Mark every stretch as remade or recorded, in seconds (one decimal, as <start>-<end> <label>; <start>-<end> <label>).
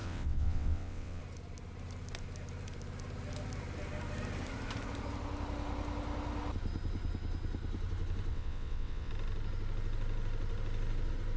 0.0-1.2 remade; 1.2-8.3 recorded; 8.3-9.1 remade; 9.1-11.4 recorded